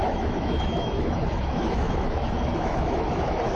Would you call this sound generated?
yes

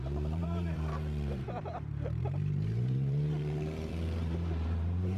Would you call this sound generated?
yes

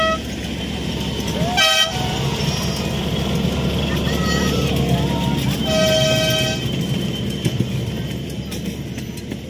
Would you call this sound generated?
no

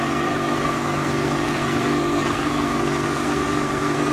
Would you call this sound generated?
yes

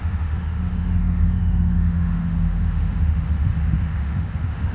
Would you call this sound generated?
yes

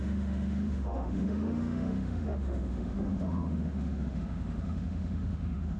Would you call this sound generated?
yes